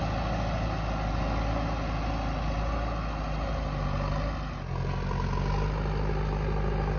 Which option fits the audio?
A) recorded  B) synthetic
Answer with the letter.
A